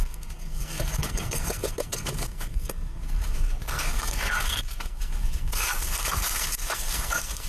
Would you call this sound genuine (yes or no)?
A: no